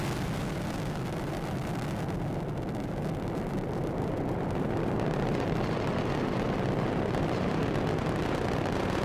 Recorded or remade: recorded